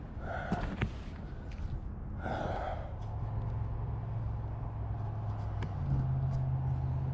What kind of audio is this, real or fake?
real